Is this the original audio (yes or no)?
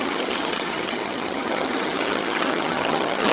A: no